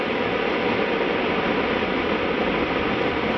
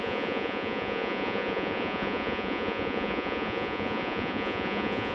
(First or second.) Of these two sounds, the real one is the first